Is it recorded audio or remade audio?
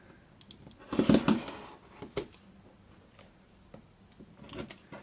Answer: recorded